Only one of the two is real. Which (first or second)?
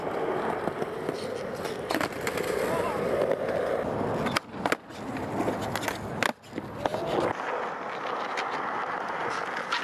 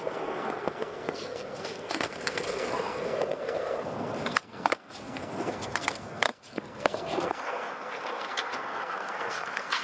first